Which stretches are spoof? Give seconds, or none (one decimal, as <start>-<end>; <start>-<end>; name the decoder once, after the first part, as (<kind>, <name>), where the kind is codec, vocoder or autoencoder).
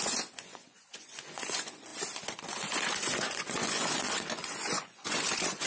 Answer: 0.0-1.9 (vocoder, Vocos); 2.6-5.7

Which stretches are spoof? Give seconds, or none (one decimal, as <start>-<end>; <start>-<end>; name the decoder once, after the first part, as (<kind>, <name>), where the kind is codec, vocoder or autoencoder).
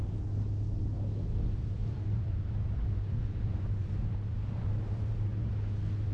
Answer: 1.8-5.5 (vocoder, BigVGAN v2)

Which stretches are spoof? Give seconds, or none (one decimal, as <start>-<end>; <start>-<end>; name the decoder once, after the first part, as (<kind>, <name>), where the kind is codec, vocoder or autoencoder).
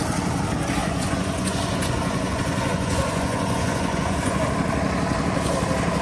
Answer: 0.8-4.4 (vocoder, Vocos)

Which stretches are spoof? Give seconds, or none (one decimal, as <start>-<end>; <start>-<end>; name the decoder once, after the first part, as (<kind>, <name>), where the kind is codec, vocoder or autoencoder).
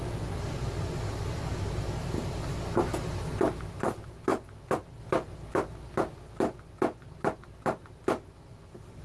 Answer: none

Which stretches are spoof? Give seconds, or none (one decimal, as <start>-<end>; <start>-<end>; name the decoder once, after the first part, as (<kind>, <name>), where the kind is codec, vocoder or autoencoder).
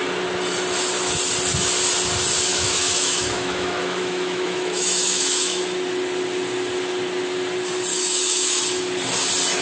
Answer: 2.5-5.6 (autoencoder, DAC-VAE); 7.9-8.6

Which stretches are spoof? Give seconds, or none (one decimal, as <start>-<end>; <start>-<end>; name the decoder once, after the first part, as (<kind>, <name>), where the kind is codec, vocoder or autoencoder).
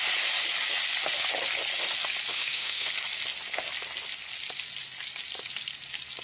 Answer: 2.3-2.9 (autoencoder, DAC-VAE)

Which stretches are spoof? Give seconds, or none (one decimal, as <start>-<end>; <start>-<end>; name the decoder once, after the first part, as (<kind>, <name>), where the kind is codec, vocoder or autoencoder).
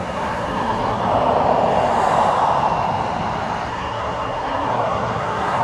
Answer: 0.0-1.0 (codec, SNAC); 3.7-5.6